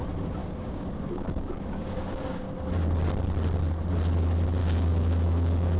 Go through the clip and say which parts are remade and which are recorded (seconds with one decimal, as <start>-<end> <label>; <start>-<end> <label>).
0.0-0.4 recorded; 0.4-2.5 remade; 2.5-4.6 recorded; 4.6-5.8 remade